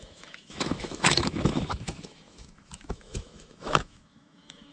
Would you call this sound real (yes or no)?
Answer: no